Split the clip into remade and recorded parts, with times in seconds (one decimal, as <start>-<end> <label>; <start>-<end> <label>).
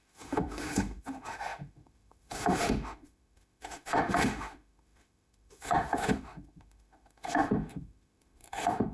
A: 0.0-8.9 remade